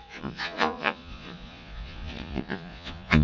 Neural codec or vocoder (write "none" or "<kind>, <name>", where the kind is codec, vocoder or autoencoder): vocoder, Vocos